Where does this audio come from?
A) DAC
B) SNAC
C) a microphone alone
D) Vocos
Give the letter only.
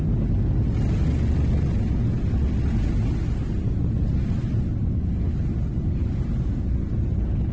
C